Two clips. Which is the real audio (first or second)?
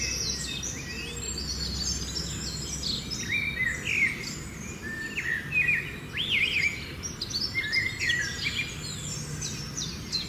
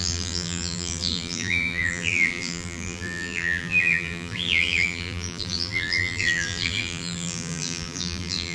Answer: first